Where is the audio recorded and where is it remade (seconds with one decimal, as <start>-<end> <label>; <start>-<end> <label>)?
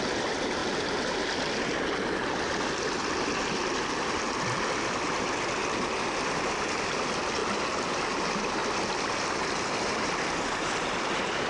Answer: 0.0-11.5 recorded